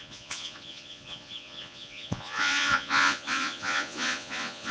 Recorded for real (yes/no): no